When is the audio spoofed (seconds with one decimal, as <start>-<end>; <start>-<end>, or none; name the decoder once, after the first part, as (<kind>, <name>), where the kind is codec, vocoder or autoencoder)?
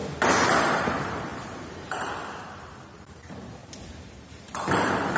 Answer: 0.8-3.6 (vocoder, BigVGAN v2); 4.2-5.2